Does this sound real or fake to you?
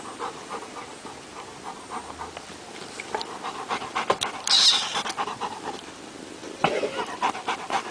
real